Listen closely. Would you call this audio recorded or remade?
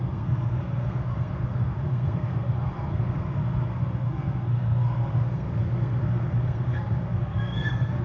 remade